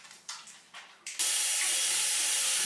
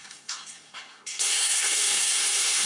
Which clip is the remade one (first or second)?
second